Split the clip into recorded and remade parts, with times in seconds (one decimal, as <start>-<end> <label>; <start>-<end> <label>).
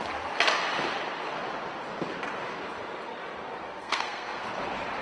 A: 0.0-3.8 recorded; 3.8-4.4 remade; 4.4-5.0 recorded